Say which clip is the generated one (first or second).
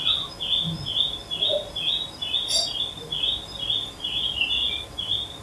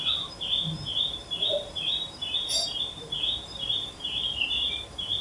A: second